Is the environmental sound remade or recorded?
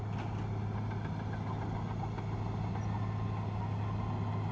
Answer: recorded